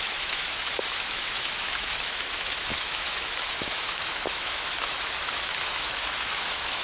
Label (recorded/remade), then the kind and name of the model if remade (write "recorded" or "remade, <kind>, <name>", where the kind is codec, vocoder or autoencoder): remade, autoencoder, DAC-VAE